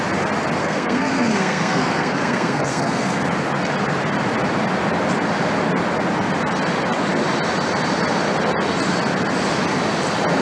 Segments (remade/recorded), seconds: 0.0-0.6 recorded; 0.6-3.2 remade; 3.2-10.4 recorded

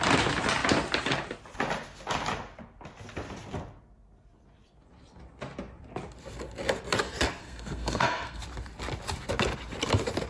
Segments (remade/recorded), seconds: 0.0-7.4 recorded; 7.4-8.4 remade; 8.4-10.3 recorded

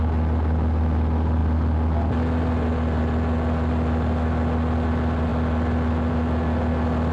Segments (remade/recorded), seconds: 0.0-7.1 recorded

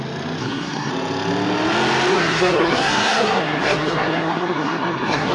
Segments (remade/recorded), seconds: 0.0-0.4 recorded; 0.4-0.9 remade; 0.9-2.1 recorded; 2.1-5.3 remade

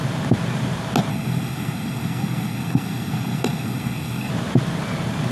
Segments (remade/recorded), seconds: 0.0-1.1 recorded; 1.1-4.3 remade; 4.3-5.3 recorded

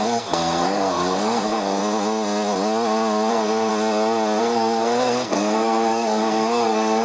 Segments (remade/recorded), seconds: 0.0-1.8 remade; 1.8-3.3 recorded; 3.3-3.7 remade; 3.7-4.4 recorded; 4.4-7.0 remade

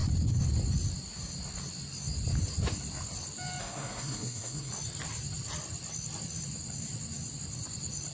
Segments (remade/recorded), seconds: 0.0-3.6 recorded; 3.6-4.7 remade; 4.7-8.1 recorded